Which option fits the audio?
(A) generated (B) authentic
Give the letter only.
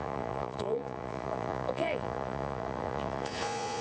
A